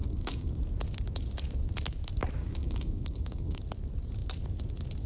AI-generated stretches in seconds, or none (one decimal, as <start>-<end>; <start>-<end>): 0.0-0.6; 2.4-3.6